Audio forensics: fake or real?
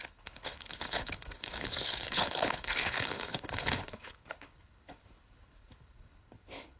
fake